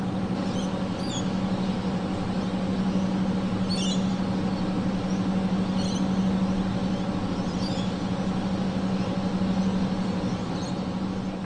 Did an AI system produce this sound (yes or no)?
no